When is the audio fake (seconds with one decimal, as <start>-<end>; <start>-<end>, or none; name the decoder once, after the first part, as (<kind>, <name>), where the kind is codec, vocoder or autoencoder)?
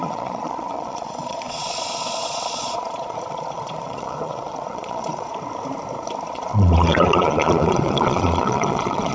0.0-5.3 (vocoder, Vocos); 6.3-9.1